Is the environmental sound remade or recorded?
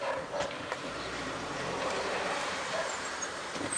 remade